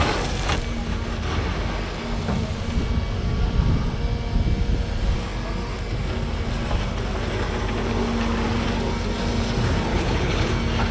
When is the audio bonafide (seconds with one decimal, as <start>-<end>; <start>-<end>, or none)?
0.0-9.9; 10.5-10.9